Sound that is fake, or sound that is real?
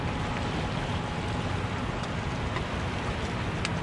real